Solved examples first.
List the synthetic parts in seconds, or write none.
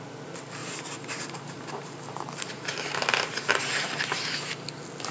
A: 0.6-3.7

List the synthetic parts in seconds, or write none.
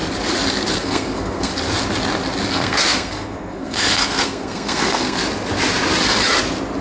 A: 0.7-1.5; 2.5-5.2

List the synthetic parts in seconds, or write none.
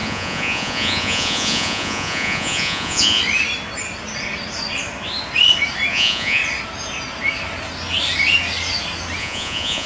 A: 0.0-3.2; 5.9-6.4; 9.2-9.9